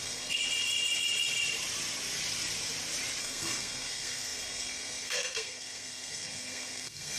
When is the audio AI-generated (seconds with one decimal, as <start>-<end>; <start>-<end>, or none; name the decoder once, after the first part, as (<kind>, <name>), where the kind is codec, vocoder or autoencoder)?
0.0-0.4 (codec, SNAC); 3.2-7.2